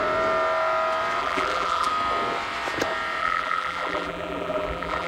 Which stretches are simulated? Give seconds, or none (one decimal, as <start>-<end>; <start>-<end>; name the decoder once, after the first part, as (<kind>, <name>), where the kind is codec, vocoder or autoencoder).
1.2-1.9 (vocoder, BigVGAN v2); 3.2-5.1